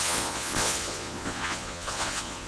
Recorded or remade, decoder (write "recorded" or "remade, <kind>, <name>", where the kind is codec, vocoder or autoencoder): remade, vocoder, Vocos